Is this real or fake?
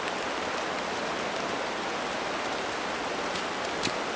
real